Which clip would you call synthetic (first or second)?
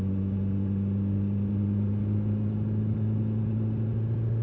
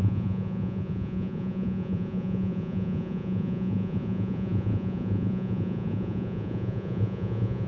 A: second